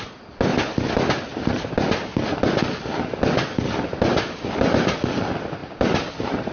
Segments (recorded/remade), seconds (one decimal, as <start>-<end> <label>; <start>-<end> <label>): 0.0-6.5 recorded